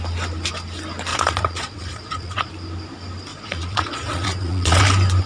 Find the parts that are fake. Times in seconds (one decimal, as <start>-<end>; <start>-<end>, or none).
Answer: 1.1-2.5; 3.3-4.8